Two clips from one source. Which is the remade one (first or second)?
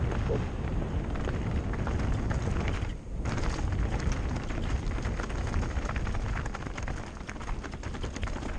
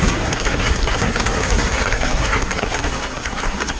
second